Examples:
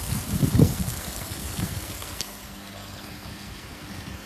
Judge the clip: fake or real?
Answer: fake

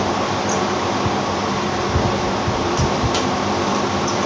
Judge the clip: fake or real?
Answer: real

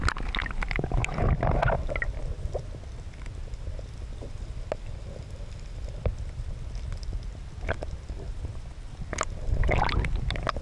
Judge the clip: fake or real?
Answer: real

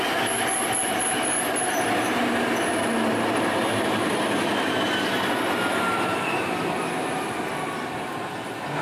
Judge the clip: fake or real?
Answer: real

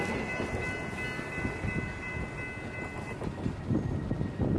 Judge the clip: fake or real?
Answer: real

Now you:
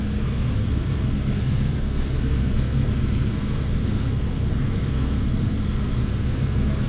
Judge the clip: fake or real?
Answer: fake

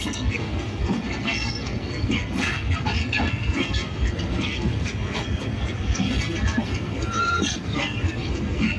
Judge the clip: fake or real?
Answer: fake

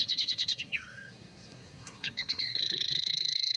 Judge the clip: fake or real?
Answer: fake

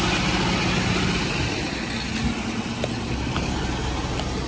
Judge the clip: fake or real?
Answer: real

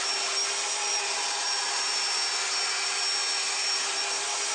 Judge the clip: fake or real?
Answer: real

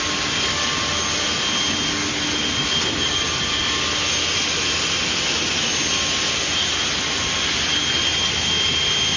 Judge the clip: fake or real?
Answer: real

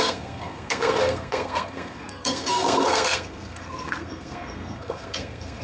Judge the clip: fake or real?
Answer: fake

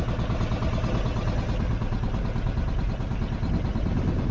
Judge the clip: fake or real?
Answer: real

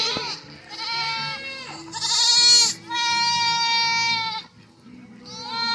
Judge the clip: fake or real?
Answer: real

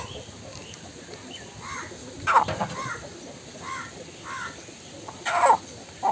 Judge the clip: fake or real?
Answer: real